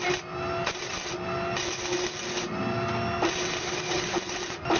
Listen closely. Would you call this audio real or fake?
real